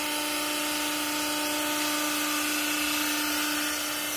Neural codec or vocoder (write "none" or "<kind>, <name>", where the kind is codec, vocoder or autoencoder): none